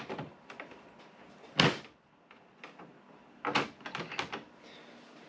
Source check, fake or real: real